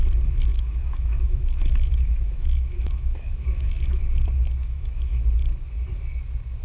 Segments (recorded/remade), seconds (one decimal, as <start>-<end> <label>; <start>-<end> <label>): 0.0-0.5 recorded; 0.5-4.0 remade; 4.0-4.6 recorded; 4.6-5.2 remade; 5.2-6.6 recorded

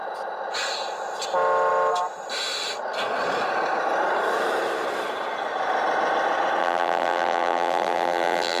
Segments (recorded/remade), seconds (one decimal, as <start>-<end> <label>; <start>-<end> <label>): 0.0-6.6 recorded; 6.6-8.6 remade